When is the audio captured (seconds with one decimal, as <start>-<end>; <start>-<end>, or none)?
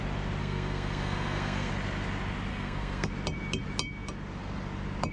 0.0-0.4; 1.7-2.5; 3.1-5.1